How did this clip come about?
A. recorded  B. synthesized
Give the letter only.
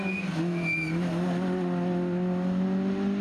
A